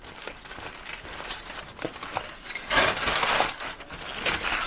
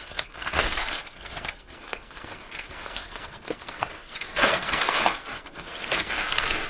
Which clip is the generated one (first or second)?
second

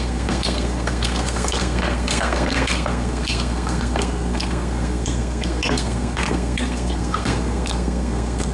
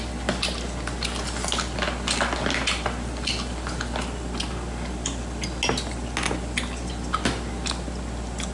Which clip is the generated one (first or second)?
first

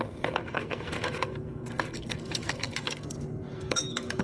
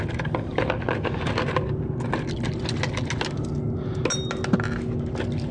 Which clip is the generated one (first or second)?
first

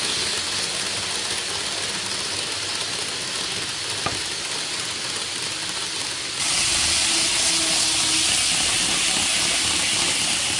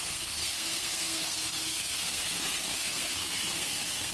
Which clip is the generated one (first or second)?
second